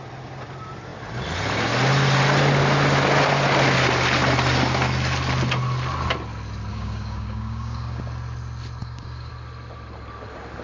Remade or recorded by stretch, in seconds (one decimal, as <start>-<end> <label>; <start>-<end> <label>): 0.0-6.7 recorded; 6.7-8.0 remade; 8.0-8.8 recorded; 8.8-9.3 remade; 9.3-10.6 recorded